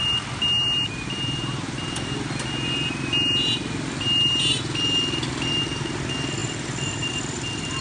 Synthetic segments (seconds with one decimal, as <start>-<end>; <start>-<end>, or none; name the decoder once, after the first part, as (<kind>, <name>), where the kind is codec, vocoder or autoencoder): 6.4-7.1 (vocoder, BigVGAN v2)